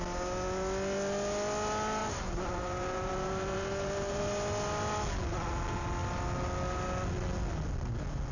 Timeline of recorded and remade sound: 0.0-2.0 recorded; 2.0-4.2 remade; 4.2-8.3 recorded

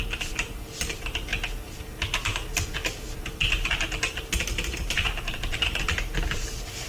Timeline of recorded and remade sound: 0.0-1.3 remade; 1.3-4.1 recorded; 4.1-6.9 remade

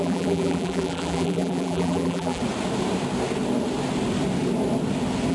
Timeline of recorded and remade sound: 0.0-2.4 remade; 2.4-5.3 recorded

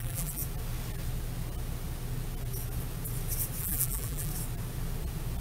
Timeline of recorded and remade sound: 0.0-0.4 remade; 0.4-3.6 recorded; 3.6-4.3 remade; 4.3-5.4 recorded

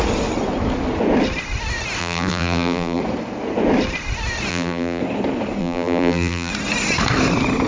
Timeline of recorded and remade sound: 0.0-2.0 recorded; 2.0-3.0 remade; 3.0-4.5 recorded; 4.5-5.0 remade; 5.0-5.6 recorded; 5.6-6.5 remade; 6.5-7.7 recorded

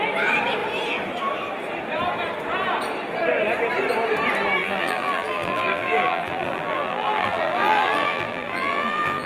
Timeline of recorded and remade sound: 0.0-4.6 recorded; 4.6-9.3 remade

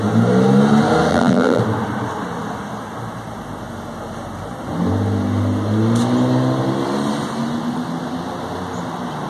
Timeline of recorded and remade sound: 0.0-1.1 recorded; 1.1-1.6 remade; 1.6-9.3 recorded

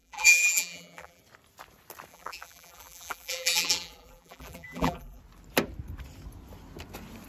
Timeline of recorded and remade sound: 0.0-1.2 remade; 1.2-2.1 recorded; 2.1-5.2 remade; 5.2-7.3 recorded